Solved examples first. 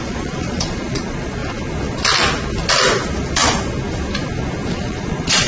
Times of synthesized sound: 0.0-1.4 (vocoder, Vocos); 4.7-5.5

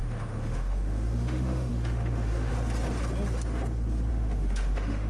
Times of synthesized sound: 0.0-2.5 (autoencoder, DAC-VAE); 4.1-5.1

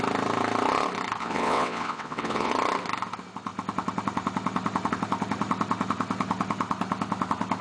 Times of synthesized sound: 1.2-2.5 (vocoder, WaveNeXt)

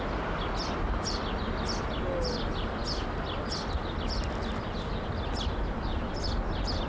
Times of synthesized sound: none